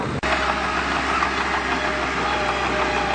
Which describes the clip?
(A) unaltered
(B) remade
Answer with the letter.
A